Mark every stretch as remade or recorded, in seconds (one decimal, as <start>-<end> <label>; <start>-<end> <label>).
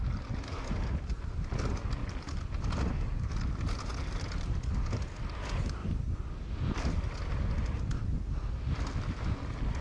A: 0.0-2.0 recorded; 2.0-3.4 remade; 3.4-9.8 recorded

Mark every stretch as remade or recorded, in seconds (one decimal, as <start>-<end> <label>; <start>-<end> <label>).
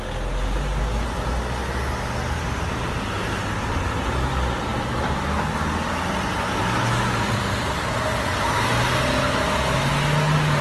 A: 0.0-10.6 recorded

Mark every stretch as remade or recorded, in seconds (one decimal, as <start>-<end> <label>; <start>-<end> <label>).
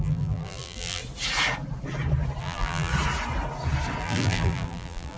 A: 0.0-1.0 remade; 1.0-2.4 recorded; 2.4-2.9 remade; 2.9-4.0 recorded; 4.0-5.2 remade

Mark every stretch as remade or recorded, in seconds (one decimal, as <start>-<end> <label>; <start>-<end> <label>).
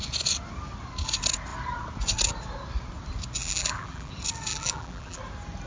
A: 0.0-3.4 recorded; 3.4-4.1 remade; 4.1-4.5 recorded; 4.5-5.2 remade; 5.2-5.7 recorded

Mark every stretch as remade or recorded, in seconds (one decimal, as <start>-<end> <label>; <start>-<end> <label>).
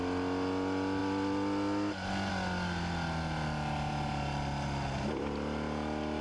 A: 0.0-6.2 recorded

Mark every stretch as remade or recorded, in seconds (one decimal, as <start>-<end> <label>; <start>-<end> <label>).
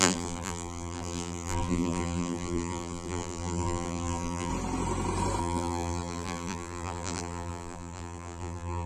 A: 0.0-4.5 remade; 4.5-5.4 recorded; 5.4-8.9 remade